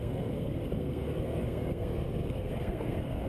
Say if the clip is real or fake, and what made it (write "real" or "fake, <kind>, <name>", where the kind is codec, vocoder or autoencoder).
fake, codec, SNAC